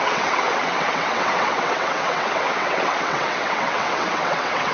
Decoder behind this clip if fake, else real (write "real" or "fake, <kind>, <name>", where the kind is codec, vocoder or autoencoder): fake, vocoder, WaveNeXt